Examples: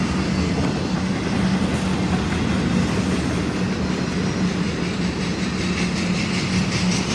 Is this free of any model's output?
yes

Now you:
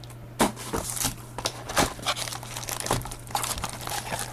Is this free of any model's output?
yes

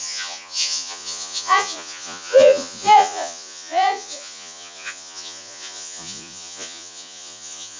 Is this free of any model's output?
no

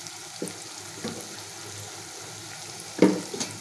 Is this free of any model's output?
yes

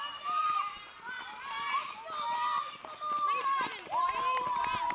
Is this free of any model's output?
yes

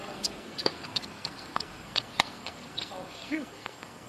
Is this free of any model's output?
no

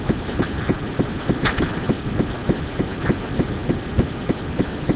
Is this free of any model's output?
yes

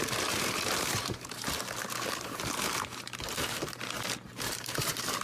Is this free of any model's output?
no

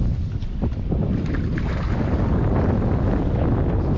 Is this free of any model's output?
yes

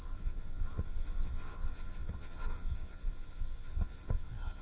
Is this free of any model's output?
no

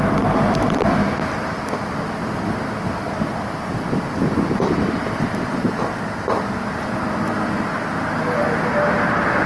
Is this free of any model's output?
yes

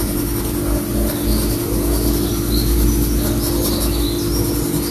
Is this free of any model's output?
yes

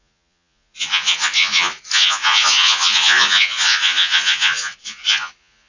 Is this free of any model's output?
no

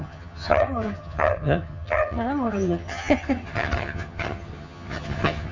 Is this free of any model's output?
no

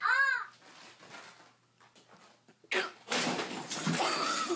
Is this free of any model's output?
yes